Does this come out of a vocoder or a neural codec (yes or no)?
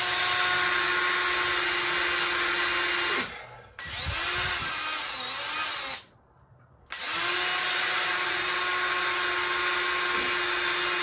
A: no